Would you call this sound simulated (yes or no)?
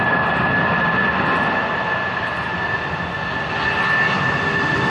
no